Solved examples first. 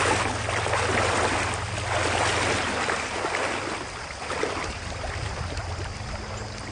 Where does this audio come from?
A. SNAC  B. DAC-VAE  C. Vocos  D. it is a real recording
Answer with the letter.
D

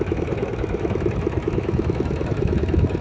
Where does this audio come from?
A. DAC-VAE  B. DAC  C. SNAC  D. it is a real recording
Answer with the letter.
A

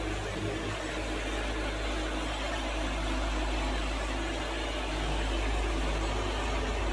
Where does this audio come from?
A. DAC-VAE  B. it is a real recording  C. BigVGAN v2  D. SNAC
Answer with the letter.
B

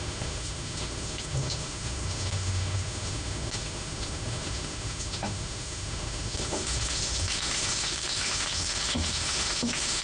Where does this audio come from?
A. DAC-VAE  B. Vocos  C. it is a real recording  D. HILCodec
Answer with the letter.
A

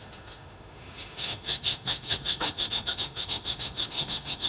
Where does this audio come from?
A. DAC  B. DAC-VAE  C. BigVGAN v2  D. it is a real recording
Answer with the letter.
B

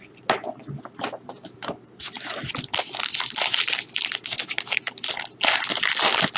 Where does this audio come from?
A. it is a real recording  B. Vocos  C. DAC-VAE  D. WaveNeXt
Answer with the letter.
A